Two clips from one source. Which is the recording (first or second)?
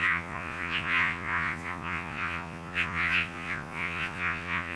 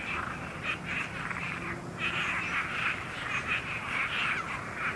second